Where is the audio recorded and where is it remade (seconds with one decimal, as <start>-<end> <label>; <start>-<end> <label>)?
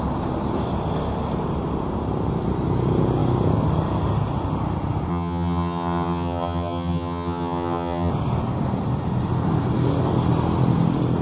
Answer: 0.0-5.1 recorded; 5.1-8.1 remade; 8.1-11.2 recorded